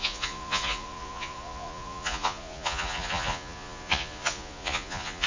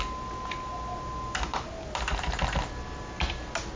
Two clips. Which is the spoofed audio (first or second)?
first